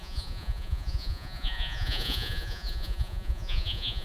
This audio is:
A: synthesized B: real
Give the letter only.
A